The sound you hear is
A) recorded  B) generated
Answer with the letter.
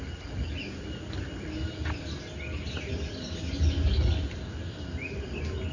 A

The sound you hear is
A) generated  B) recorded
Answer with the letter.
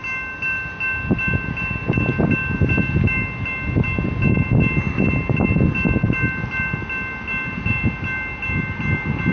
B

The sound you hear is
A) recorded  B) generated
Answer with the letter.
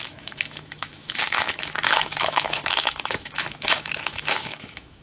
B